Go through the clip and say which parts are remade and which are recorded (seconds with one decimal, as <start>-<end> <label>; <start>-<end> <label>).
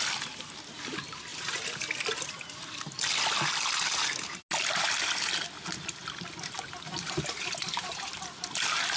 0.0-9.0 recorded